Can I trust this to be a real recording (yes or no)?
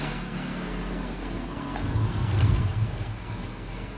no